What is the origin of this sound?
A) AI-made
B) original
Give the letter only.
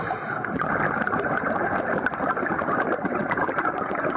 B